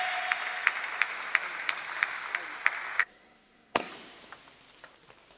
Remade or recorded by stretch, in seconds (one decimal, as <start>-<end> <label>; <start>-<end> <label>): 0.0-3.0 recorded; 3.0-3.9 remade; 3.9-5.4 recorded